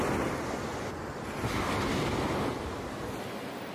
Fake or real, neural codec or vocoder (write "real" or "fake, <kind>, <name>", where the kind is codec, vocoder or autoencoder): real